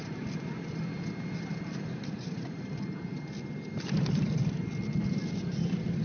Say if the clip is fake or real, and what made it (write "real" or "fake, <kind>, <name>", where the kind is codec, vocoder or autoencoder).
real